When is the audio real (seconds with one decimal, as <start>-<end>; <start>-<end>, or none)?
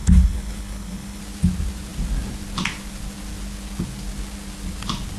1.2-5.2